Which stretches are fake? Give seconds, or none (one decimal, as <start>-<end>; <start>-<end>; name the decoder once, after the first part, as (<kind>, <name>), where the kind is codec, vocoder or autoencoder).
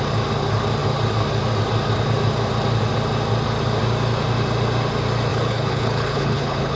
5.3-6.8 (codec, HILCodec)